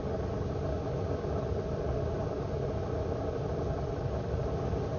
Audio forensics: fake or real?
real